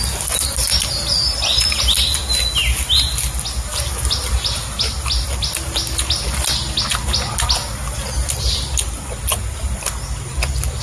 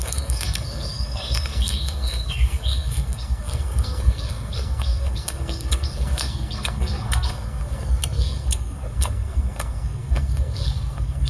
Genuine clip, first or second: first